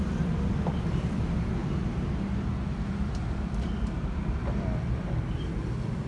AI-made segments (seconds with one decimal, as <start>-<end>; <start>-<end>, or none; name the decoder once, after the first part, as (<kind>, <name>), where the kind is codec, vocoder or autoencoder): 0.0-1.6 (vocoder, BigVGAN v2); 2.9-6.1